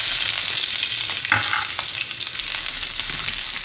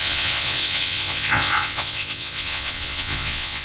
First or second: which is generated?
second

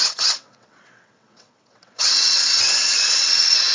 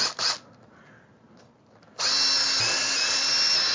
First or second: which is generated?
first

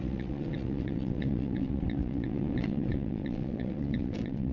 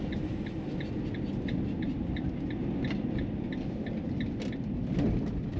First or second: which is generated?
first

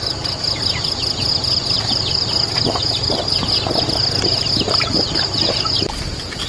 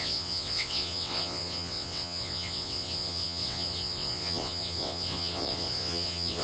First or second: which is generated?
second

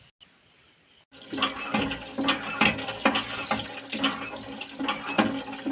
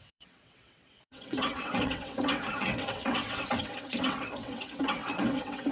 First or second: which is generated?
second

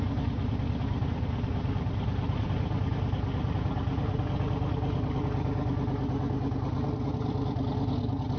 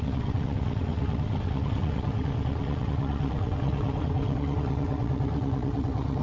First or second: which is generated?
second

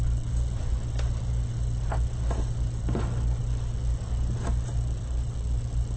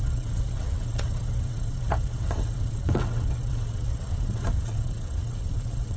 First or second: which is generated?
second